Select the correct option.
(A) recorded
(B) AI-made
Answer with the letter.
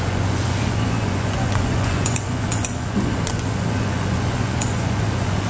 B